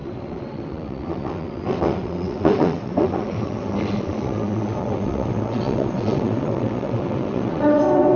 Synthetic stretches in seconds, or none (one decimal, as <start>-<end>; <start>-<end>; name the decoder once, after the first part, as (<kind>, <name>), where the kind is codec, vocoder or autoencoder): 0.0-8.2 (vocoder, WaveNeXt)